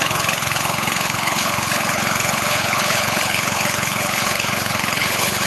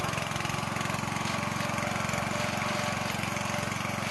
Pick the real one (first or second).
second